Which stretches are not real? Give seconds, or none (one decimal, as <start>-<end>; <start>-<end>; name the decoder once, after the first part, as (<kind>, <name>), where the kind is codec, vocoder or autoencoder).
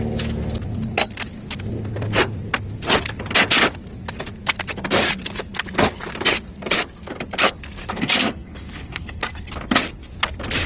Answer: 7.8-9.5 (codec, SNAC)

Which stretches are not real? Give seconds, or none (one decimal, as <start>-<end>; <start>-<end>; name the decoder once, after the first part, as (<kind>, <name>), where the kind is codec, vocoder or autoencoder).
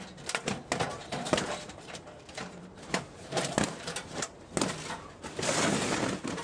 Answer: 0.9-4.5 (vocoder, BigVGAN v2)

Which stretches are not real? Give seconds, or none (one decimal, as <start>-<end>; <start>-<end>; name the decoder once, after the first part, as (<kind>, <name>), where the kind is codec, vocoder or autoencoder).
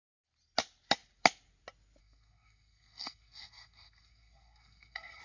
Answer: 2.0-5.2 (codec, SNAC)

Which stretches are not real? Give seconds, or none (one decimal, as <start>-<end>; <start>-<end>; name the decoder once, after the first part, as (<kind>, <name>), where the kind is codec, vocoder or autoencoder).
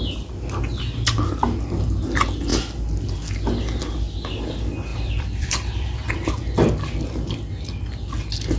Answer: 4.9-6.3 (vocoder, BigVGAN v2)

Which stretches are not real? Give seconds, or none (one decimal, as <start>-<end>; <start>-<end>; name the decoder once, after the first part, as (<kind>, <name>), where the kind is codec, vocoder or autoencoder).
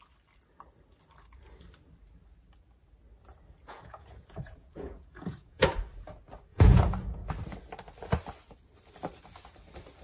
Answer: 3.6-5.7 (vocoder, Vocos); 6.5-7.3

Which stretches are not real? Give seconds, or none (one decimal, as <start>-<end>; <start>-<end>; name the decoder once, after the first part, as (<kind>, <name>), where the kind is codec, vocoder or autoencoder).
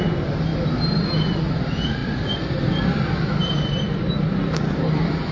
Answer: none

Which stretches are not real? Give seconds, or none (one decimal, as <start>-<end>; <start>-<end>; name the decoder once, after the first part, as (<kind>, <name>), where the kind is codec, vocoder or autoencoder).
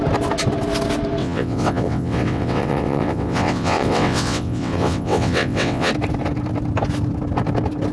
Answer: 1.2-5.9 (vocoder, WaveNeXt)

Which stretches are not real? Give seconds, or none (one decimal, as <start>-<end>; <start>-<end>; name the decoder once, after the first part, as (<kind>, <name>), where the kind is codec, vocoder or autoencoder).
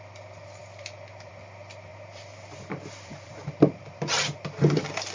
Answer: 1.9-4.4 (vocoder, BigVGAN v2)